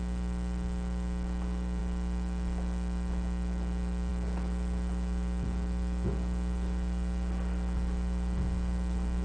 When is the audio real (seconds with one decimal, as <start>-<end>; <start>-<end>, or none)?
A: 0.0-9.2